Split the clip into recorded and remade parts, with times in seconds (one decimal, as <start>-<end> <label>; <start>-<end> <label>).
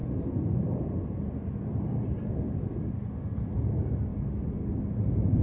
0.0-4.1 remade; 4.1-5.4 recorded